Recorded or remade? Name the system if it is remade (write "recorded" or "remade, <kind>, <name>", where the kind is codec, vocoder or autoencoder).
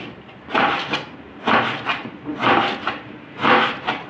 recorded